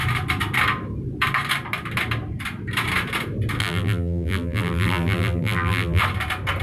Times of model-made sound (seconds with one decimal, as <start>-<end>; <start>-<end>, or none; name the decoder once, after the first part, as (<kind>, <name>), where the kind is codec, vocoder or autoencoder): 3.6-6.0 (vocoder, BigVGAN v2)